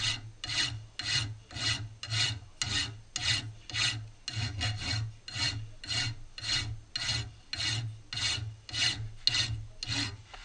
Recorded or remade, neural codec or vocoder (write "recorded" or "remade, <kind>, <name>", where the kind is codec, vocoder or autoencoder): recorded